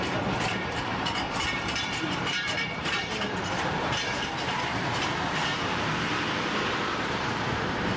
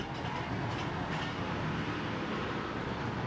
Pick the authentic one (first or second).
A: second